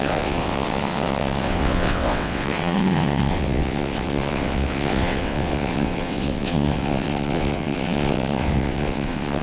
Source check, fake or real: fake